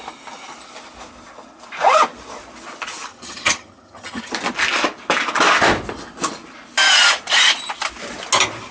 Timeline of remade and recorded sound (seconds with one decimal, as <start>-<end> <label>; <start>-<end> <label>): 0.0-3.1 recorded; 3.1-4.3 remade; 4.3-8.7 recorded